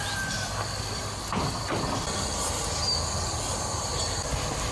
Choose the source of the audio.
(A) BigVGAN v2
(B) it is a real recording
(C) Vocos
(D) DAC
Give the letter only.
B